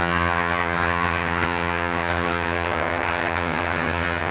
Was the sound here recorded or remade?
remade